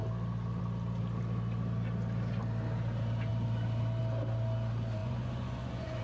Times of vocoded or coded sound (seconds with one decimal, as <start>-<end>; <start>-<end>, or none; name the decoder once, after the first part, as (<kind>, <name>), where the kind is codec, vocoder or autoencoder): 5.0-6.0 (vocoder, Vocos)